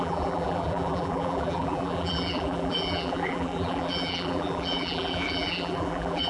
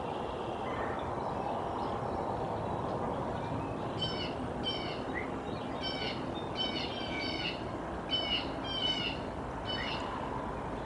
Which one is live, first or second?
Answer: second